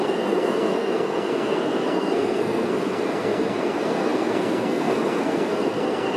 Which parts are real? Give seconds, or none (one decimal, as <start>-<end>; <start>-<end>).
none